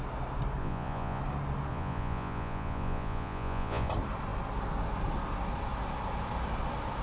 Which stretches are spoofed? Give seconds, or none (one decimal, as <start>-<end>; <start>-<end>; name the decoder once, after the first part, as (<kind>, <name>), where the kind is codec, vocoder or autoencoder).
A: 0.6-1.2 (vocoder, Vocos); 1.7-3.9